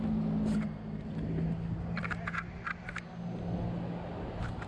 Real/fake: real